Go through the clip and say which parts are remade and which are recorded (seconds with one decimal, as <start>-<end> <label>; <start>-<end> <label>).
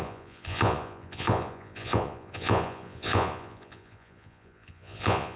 0.0-5.4 remade